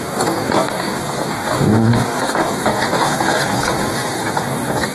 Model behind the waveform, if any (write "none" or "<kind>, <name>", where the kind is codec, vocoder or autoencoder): codec, DAC